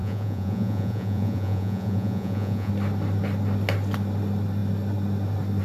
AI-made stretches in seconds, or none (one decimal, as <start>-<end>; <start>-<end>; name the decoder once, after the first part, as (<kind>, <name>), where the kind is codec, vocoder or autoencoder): 0.0-2.7 (vocoder, Vocos)